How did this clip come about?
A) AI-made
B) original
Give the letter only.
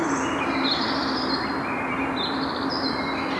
B